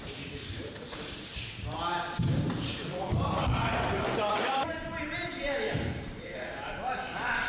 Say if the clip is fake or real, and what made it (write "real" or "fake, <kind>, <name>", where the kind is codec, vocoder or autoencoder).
fake, vocoder, BigVGAN v2